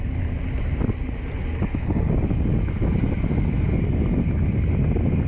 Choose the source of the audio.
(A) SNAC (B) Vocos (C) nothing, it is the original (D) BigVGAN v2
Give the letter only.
C